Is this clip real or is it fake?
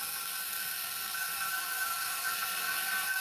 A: fake